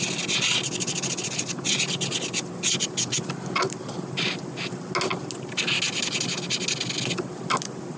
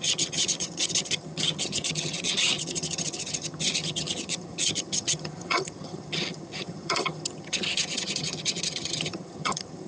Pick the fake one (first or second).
second